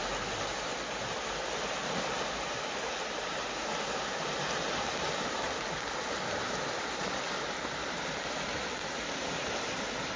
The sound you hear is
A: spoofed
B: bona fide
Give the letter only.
B